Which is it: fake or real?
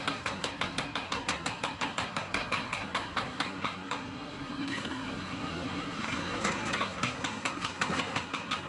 fake